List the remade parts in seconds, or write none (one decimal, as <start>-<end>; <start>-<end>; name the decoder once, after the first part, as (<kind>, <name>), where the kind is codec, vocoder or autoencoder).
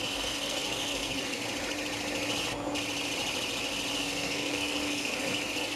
0.0-1.4 (codec, SNAC); 4.0-5.8